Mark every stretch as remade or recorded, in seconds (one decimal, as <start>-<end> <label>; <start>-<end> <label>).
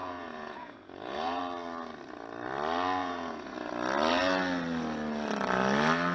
0.0-1.4 remade; 1.4-3.0 recorded; 3.0-3.7 remade; 3.7-6.1 recorded